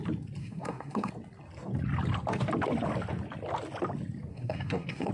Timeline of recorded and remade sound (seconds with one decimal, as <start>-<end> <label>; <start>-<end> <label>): 0.0-0.4 recorded; 0.4-1.1 remade; 1.1-4.3 recorded; 4.3-5.1 remade